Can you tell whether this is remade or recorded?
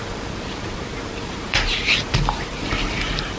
remade